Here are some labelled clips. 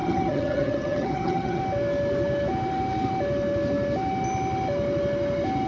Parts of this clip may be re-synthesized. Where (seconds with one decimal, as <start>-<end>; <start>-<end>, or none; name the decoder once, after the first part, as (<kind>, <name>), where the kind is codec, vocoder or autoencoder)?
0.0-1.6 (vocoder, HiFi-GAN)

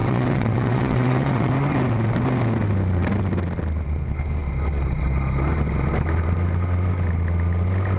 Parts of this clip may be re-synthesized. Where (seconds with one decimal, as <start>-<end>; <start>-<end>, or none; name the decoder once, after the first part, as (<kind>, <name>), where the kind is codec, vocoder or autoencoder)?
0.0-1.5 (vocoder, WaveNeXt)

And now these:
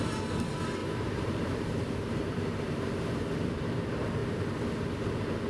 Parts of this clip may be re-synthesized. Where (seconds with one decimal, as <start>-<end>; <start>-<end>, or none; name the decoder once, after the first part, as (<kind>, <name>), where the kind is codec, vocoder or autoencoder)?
0.8-3.0 (vocoder, BigVGAN v2)